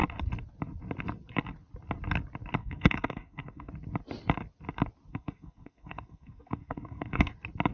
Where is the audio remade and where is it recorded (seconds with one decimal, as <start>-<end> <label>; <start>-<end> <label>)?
0.0-2.6 recorded; 2.6-3.7 remade; 3.7-5.1 recorded; 5.1-7.3 remade; 7.3-7.7 recorded